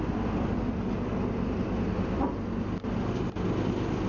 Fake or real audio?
real